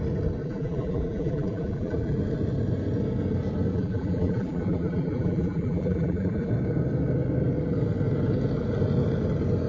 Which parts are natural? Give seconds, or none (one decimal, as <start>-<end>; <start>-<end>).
0.0-0.4; 2.2-3.7; 6.5-9.7